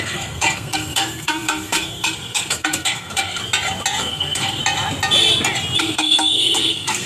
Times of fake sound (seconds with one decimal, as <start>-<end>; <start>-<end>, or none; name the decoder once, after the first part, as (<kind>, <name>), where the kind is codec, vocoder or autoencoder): 0.0-3.4 (codec, SNAC); 4.0-4.6; 5.8-7.1